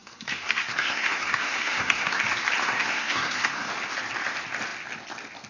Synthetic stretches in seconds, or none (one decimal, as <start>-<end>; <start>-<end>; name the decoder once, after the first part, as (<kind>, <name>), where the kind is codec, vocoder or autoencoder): 0.0-2.2 (codec, SNAC); 2.6-3.7